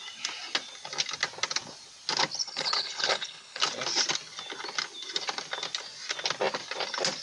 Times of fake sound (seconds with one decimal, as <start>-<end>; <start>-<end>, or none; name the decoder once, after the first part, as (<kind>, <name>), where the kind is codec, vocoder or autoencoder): 2.4-3.6 (codec, HILCodec)